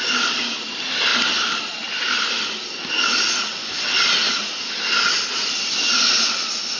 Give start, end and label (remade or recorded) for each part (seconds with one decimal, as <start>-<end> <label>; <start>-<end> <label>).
0.0-1.1 recorded; 1.1-2.9 remade; 2.9-4.2 recorded; 4.2-4.8 remade; 4.8-6.8 recorded